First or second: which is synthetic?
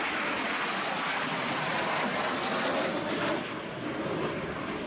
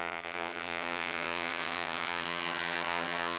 second